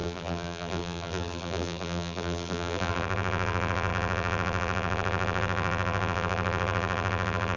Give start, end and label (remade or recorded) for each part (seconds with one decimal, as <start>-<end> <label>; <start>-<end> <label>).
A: 0.0-7.6 remade